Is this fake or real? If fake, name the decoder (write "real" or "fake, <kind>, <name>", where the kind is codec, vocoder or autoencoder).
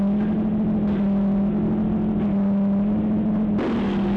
real